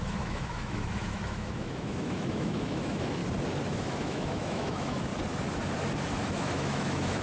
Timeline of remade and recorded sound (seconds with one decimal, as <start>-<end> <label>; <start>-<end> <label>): 0.0-3.2 remade; 3.2-3.7 recorded; 3.7-5.1 remade; 5.1-6.3 recorded; 6.3-7.2 remade